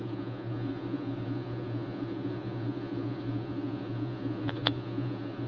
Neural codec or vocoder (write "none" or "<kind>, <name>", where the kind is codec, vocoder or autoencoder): vocoder, Vocos